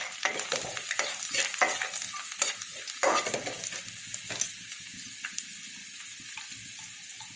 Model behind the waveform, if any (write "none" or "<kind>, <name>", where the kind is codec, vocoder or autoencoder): none